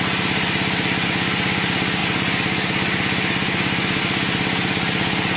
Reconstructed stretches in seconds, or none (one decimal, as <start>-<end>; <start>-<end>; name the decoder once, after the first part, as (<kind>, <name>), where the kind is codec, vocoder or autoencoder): none